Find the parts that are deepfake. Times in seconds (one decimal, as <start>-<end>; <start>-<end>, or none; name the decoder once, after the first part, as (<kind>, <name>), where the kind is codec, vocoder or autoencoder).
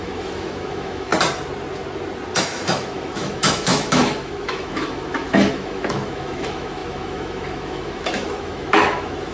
0.0-1.1 (autoencoder, DAC-VAE); 2.4-9.3